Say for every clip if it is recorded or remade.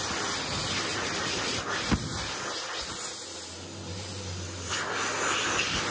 recorded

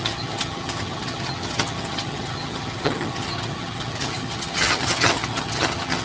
remade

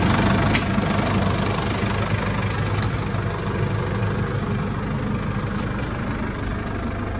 recorded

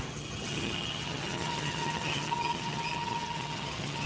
remade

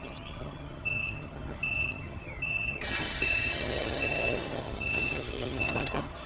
remade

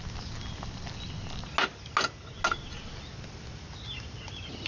recorded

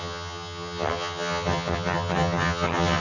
remade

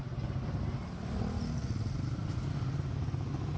recorded